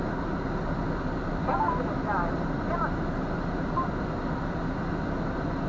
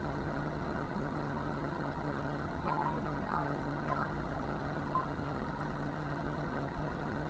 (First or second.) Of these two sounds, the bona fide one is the first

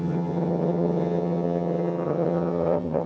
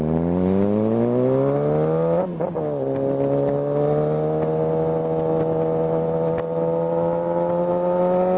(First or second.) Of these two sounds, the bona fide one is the second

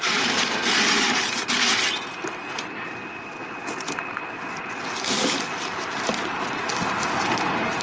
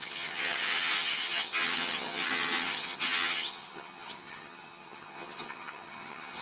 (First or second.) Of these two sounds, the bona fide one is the first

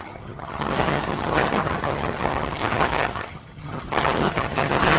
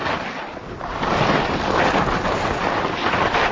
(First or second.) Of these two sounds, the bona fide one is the second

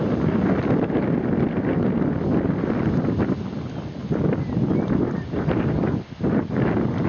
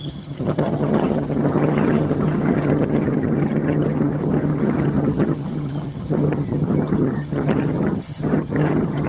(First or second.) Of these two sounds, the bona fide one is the first